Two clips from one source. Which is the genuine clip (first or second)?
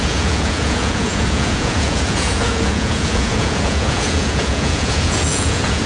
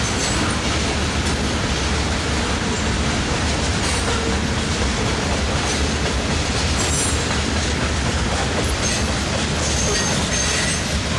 second